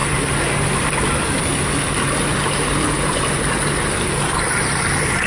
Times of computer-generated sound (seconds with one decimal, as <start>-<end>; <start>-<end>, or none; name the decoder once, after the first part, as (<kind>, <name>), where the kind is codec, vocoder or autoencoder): 0.0-0.8 (vocoder, BigVGAN v2)